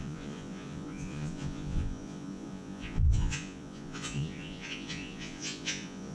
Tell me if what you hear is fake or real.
fake